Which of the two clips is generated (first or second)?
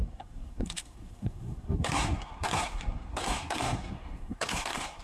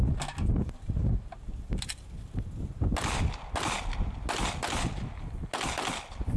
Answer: first